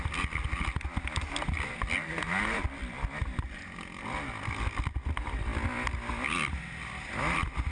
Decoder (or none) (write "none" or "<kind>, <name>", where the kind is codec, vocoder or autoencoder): none